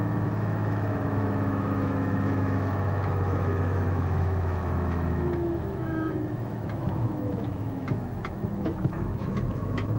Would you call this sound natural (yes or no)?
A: no